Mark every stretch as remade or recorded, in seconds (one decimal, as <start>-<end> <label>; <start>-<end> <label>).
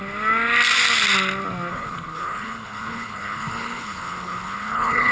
0.0-1.7 recorded; 1.7-5.1 remade